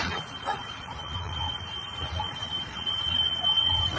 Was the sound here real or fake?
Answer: fake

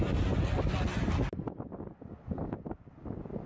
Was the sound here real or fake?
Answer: real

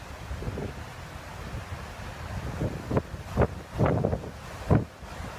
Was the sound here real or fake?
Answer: real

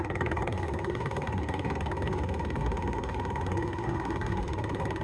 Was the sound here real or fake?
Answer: fake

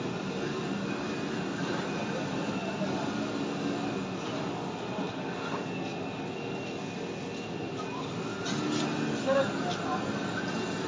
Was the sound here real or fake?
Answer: real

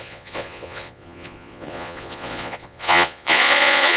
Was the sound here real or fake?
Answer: fake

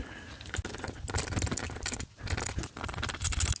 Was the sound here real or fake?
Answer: real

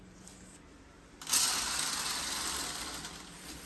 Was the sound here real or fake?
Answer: real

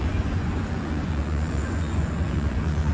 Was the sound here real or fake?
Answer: fake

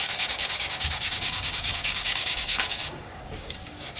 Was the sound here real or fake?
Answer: fake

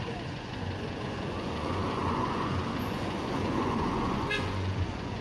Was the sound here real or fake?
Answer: fake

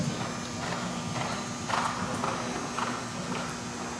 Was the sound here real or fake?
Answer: real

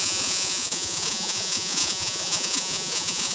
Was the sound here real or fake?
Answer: fake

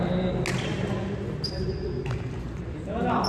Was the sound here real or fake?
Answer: real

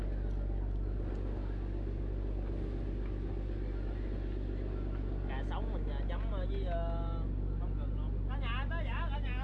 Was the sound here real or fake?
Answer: real